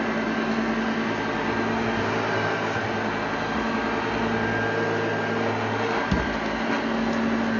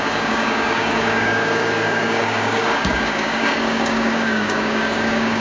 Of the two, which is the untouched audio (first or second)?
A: first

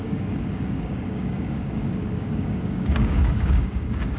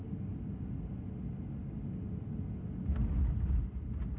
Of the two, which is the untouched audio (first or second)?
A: second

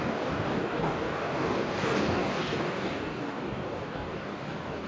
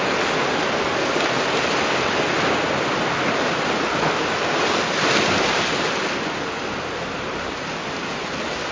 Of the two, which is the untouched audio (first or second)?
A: second